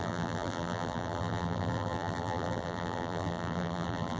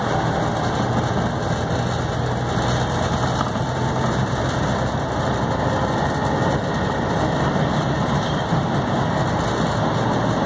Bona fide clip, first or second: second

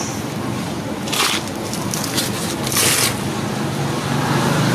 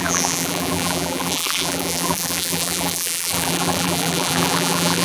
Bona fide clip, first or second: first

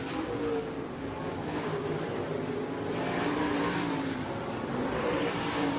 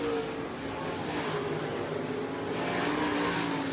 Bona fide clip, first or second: second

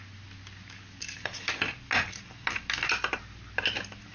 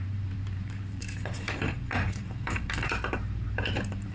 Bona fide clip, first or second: first